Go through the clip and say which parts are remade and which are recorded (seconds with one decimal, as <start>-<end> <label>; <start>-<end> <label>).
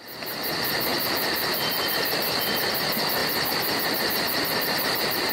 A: 0.0-5.3 recorded